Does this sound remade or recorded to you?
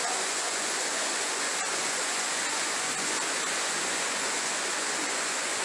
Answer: remade